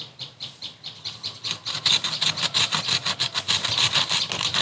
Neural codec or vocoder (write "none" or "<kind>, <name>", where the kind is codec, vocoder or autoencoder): none